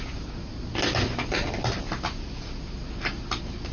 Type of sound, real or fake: real